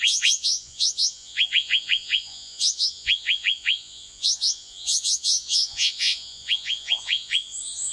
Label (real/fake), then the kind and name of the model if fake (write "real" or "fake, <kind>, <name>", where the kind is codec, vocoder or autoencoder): fake, vocoder, Vocos